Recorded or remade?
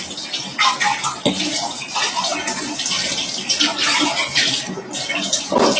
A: recorded